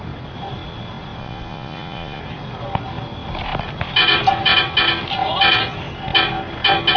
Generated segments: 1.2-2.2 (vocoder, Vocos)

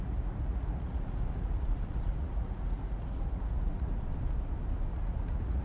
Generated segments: 0.0-4.1 (vocoder, Vocos); 4.9-5.6